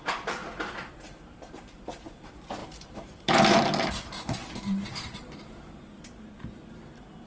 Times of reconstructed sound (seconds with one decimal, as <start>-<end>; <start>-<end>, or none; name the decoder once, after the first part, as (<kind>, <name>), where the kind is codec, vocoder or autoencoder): 0.0-0.4 (vocoder, BigVGAN v2); 1.5-7.3